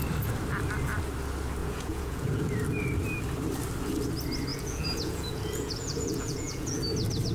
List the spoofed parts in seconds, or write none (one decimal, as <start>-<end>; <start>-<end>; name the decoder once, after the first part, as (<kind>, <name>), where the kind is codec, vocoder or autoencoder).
1.6-2.5 (vocoder, Vocos); 4.5-6.8